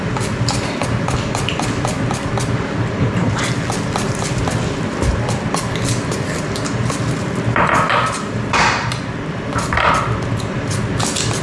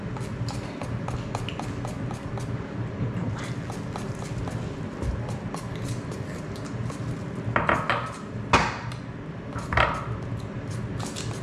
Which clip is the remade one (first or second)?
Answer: first